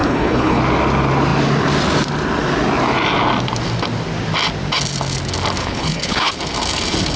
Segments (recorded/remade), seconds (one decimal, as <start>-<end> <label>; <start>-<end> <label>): 0.0-0.6 remade; 0.6-5.6 recorded; 5.6-6.3 remade; 6.3-7.2 recorded